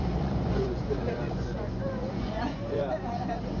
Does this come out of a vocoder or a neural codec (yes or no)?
yes